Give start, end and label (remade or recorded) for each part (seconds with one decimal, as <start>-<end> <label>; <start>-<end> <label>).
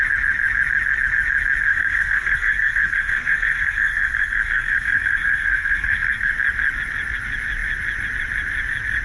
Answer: 0.0-1.7 recorded; 1.7-6.3 remade; 6.3-9.0 recorded